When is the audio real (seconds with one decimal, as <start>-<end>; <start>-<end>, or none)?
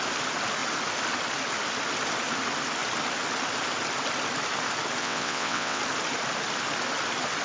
0.0-5.0; 5.8-7.4